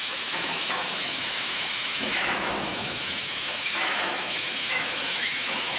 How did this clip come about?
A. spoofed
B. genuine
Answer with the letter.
A